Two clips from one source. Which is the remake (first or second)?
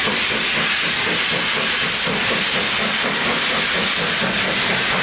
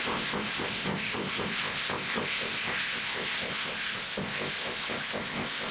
second